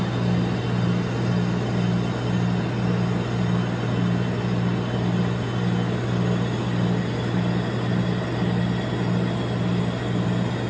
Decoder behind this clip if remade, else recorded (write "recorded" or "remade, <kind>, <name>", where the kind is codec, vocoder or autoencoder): recorded